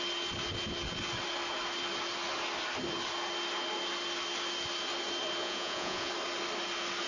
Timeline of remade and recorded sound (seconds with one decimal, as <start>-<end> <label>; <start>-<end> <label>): 0.0-5.4 recorded; 5.4-6.1 remade; 6.1-7.1 recorded